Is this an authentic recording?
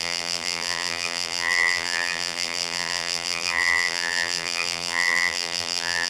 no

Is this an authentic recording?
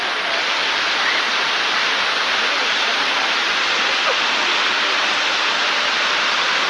yes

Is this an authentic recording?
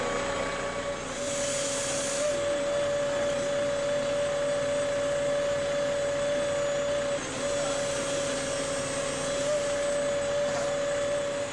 yes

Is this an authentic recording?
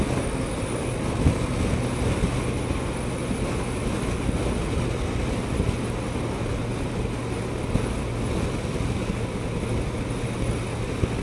yes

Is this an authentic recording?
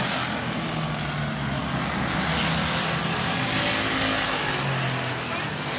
yes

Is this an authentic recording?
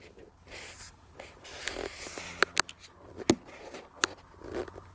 yes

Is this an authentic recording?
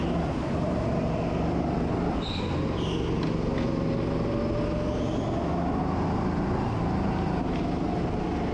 yes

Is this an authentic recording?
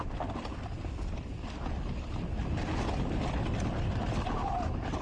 yes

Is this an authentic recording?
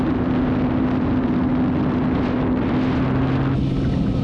yes